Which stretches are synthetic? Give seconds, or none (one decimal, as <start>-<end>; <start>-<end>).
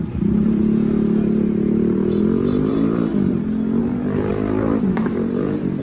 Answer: 0.0-0.6; 2.7-3.1; 3.8-5.8